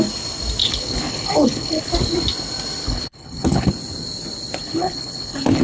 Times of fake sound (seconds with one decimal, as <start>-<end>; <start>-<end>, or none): 0.6-1.9; 2.8-3.7; 4.6-5.6